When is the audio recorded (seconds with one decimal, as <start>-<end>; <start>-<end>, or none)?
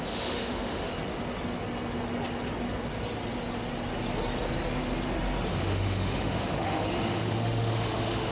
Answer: 0.9-5.5